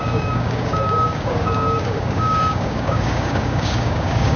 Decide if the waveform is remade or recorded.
remade